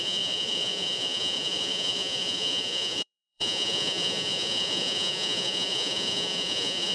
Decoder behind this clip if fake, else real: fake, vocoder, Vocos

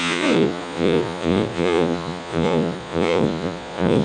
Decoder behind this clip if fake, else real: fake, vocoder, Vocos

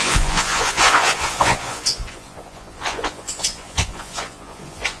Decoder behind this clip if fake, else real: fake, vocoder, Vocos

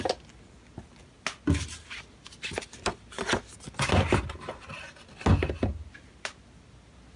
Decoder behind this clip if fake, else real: real